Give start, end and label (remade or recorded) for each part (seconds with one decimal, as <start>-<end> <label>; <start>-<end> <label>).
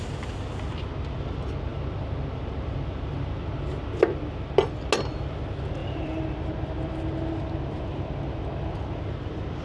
0.0-5.8 recorded; 5.8-6.5 remade; 6.5-9.6 recorded